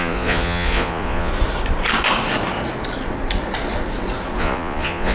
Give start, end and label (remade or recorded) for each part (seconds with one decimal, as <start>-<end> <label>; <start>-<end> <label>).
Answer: 0.0-1.3 remade; 1.3-4.4 recorded; 4.4-5.1 remade